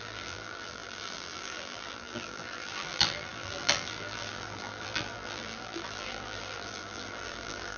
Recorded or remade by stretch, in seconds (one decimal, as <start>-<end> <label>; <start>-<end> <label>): 0.0-7.8 remade

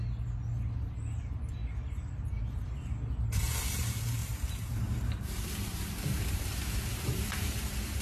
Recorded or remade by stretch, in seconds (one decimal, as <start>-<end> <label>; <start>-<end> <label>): 0.0-4.2 recorded; 4.2-8.0 remade

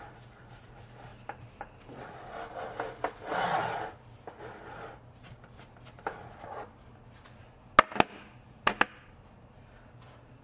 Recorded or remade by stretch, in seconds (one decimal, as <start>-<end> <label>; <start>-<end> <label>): 0.0-1.1 recorded; 1.1-2.1 remade; 2.1-10.4 recorded

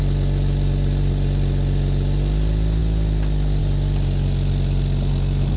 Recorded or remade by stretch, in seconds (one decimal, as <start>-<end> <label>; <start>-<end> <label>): 0.0-5.6 recorded

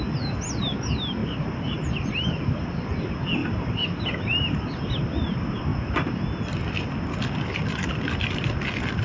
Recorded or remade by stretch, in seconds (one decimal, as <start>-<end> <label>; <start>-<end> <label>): 0.0-1.2 recorded; 1.2-2.7 remade; 2.7-3.4 recorded; 3.4-4.7 remade; 4.7-9.0 recorded

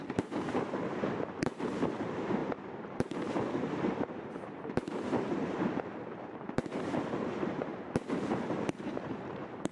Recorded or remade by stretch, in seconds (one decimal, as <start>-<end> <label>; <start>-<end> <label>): 0.0-7.7 remade; 7.7-8.3 recorded; 8.3-9.7 remade